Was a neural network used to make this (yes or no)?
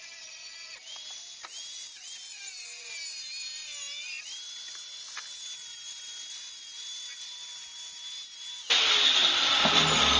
no